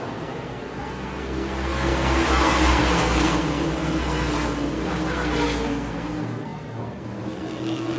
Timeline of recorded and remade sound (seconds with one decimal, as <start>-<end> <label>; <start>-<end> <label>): 0.0-8.0 remade